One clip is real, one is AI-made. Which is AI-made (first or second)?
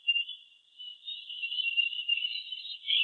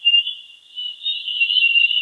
first